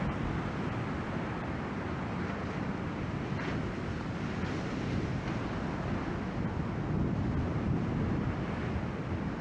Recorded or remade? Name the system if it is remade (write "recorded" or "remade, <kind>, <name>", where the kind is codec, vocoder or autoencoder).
recorded